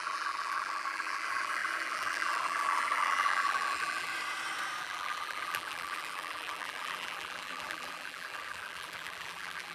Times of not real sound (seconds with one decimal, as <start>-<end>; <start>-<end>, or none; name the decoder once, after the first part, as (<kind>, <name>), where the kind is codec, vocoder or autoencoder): 0.0-4.1 (vocoder, BigVGAN v2); 4.8-9.7